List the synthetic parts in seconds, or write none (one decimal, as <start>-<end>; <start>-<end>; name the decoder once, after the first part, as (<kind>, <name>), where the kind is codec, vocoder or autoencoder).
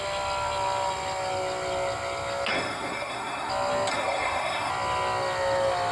2.5-3.5 (codec, SNAC); 3.9-4.7